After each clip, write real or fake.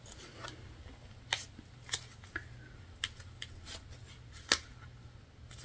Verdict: real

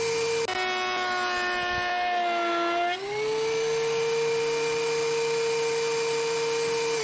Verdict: real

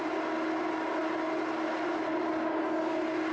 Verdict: real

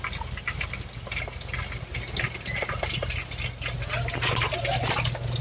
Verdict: real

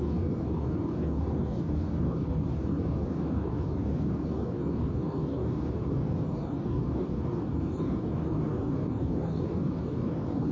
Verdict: fake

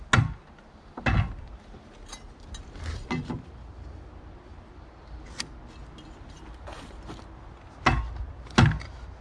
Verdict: real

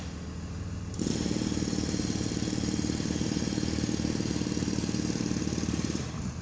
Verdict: real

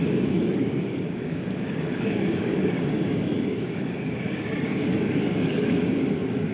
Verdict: fake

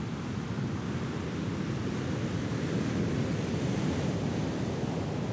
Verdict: real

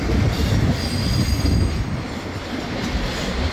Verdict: real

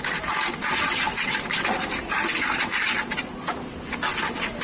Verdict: real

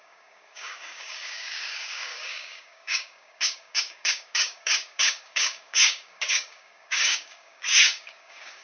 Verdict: fake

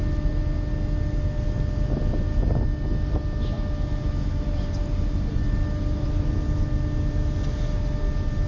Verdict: real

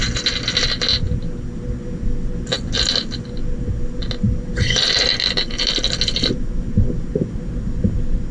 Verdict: real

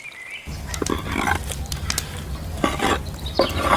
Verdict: real